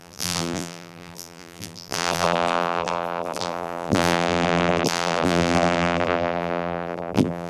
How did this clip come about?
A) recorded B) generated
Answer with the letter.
B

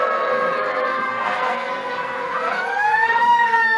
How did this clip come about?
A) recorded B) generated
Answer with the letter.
B